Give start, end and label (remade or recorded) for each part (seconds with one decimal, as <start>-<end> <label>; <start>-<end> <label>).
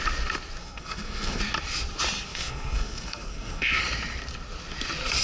0.0-0.6 recorded; 0.6-1.4 remade; 1.4-2.3 recorded; 2.3-3.8 remade; 3.8-5.2 recorded